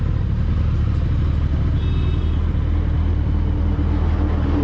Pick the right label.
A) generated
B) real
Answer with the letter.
B